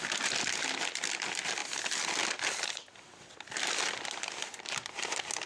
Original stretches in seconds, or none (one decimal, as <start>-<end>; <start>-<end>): 0.0-5.5